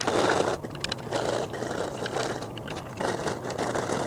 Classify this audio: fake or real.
real